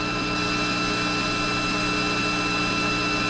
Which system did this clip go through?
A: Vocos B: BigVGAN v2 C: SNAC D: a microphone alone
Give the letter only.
D